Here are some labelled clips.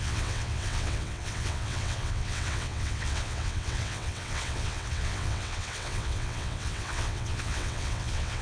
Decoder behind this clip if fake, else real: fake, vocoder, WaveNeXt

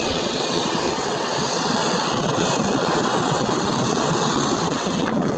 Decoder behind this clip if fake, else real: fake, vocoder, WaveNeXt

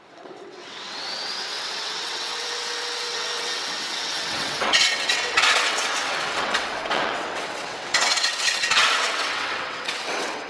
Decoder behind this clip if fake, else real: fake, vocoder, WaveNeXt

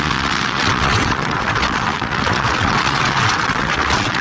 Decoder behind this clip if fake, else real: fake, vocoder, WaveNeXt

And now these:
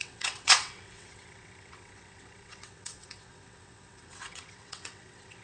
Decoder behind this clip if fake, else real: fake, vocoder, WaveNeXt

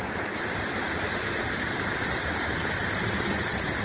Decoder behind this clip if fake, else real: real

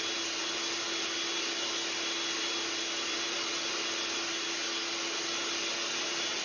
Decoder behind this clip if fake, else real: real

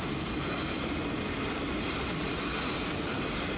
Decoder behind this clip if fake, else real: real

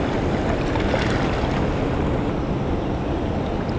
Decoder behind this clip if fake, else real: real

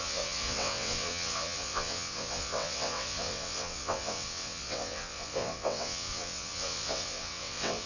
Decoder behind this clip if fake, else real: fake, vocoder, WaveNeXt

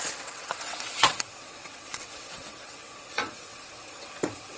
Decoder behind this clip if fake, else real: fake, vocoder, WaveNeXt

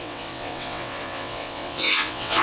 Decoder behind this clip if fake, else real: fake, vocoder, WaveNeXt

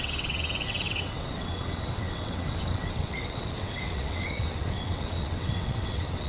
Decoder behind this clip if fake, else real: fake, vocoder, WaveNeXt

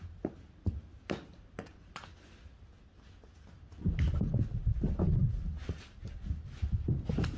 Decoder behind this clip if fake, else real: real